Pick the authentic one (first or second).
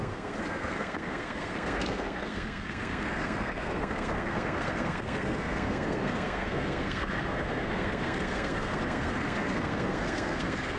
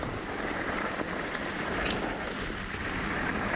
second